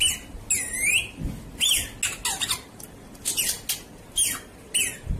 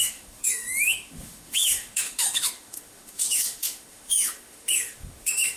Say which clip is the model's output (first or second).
second